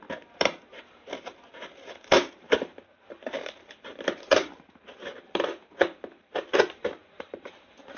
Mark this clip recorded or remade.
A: remade